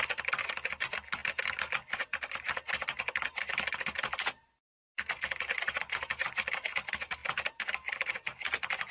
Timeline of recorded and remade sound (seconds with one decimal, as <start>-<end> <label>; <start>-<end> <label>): 0.0-7.2 recorded; 7.2-8.1 remade; 8.1-8.9 recorded